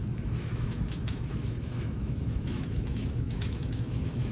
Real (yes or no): no